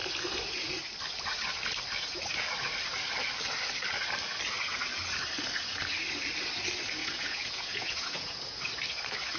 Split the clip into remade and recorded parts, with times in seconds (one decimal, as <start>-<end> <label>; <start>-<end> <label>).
0.0-7.0 recorded; 7.0-8.4 remade; 8.4-9.4 recorded

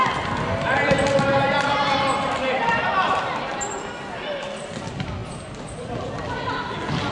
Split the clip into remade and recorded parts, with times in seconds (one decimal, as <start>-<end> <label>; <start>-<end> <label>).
0.0-7.1 recorded

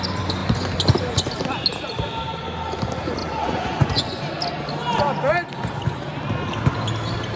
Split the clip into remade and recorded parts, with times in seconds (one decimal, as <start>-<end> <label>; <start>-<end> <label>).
0.0-3.2 recorded; 3.2-4.2 remade; 4.2-7.4 recorded

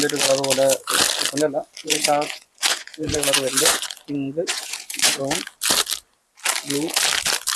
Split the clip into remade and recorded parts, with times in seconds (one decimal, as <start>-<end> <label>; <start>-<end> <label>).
0.0-1.8 recorded; 1.8-5.2 remade; 5.2-7.6 recorded